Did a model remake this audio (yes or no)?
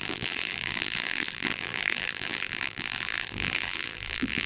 yes